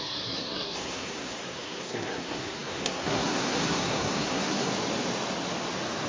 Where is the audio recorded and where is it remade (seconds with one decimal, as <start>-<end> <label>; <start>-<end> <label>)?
0.0-4.7 remade; 4.7-6.1 recorded